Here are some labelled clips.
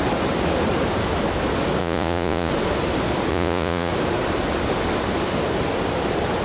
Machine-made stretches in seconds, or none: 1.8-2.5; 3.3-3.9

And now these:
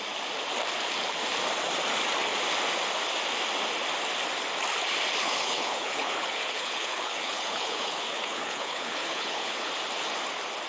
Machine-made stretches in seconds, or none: 5.2-9.7

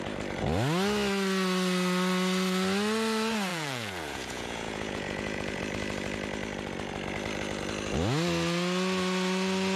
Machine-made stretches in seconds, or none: 3.5-5.6

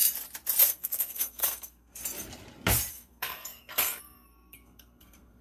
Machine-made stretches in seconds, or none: 0.7-2.0; 2.9-5.4